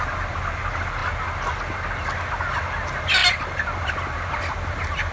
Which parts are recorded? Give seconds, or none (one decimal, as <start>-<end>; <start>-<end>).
0.0-5.1

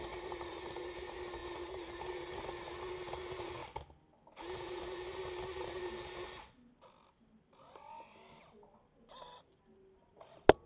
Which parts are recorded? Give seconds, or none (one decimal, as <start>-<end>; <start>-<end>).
0.8-10.7

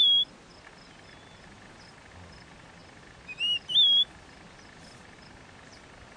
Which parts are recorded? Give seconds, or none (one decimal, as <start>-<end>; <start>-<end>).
0.0-6.2

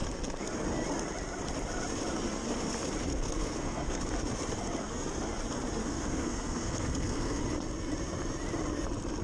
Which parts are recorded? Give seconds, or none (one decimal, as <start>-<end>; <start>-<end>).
0.0-3.1; 4.0-5.8; 7.4-9.2

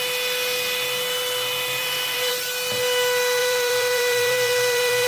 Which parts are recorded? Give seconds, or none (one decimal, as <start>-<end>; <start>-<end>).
0.0-1.8; 2.3-3.4

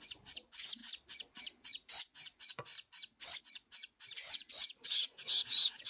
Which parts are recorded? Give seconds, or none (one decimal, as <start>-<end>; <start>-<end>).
0.8-1.9; 2.7-3.4

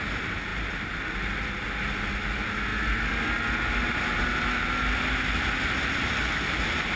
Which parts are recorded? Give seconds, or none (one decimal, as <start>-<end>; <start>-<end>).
0.0-0.5; 1.5-7.0